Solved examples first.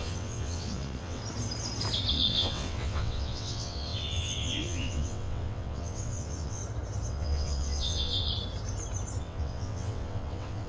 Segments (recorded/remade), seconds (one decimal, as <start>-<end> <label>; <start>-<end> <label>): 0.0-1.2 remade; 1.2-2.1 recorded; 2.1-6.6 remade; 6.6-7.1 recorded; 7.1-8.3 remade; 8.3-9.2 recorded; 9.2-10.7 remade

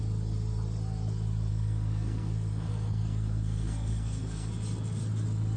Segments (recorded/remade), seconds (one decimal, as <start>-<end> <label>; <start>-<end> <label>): 0.0-1.5 recorded; 1.5-4.5 remade; 4.5-5.6 recorded

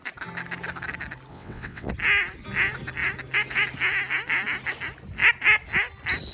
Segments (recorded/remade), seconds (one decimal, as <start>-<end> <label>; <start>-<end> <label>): 0.0-1.3 recorded; 1.3-1.9 remade; 1.9-6.3 recorded

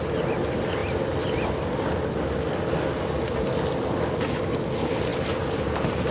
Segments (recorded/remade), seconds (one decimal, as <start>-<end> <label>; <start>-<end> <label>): 0.0-5.1 recorded; 5.1-6.1 remade

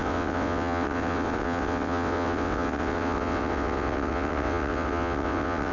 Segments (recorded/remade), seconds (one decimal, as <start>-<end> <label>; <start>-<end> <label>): 0.0-5.7 remade

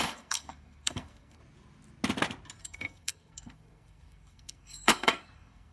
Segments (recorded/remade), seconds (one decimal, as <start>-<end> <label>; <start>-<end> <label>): 0.0-1.4 remade; 1.4-2.6 recorded; 2.6-5.7 remade